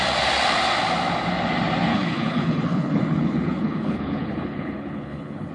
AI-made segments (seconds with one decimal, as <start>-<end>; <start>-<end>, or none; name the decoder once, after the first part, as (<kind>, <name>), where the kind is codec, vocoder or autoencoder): 1.9-5.5 (codec, HILCodec)